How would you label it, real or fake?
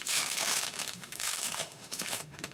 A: fake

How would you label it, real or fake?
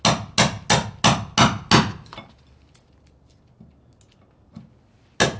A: real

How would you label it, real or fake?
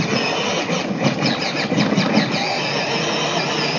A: real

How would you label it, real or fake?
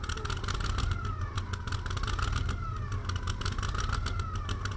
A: real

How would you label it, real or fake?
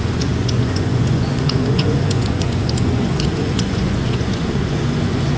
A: fake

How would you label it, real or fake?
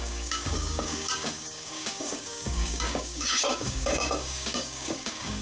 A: fake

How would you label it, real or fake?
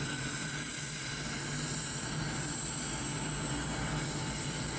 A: real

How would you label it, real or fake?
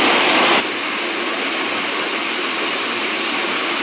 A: real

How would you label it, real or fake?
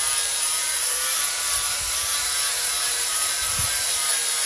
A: fake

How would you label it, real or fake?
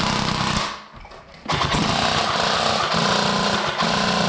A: real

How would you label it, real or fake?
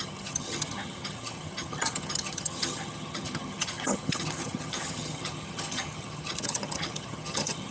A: fake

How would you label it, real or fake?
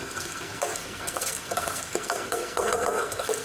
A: fake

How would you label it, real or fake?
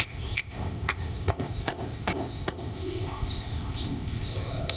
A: fake